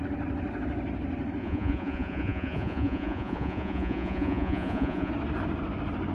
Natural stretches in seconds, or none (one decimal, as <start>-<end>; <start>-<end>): 0.0-1.4; 5.1-6.1